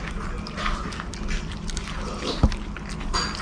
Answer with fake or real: real